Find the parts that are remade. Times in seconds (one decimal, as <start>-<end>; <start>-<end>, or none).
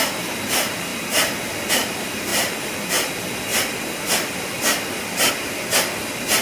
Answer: 0.0-0.9; 1.7-6.4